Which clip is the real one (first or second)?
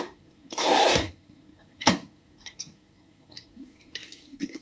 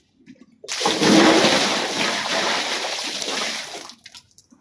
second